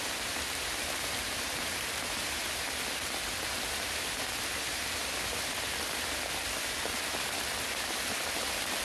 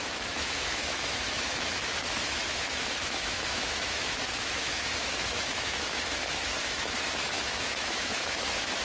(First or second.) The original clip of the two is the first